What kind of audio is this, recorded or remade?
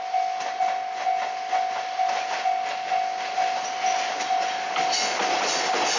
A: recorded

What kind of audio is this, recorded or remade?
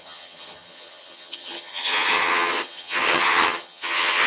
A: remade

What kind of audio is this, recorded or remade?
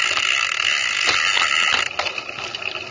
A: recorded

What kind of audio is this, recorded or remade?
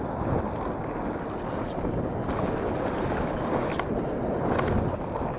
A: recorded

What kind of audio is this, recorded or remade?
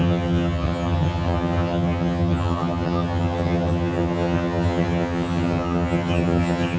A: remade